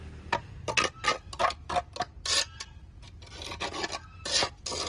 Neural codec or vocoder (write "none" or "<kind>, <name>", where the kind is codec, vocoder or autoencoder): none